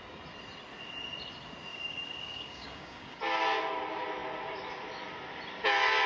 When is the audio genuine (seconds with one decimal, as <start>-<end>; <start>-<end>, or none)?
0.0-1.7; 3.2-6.1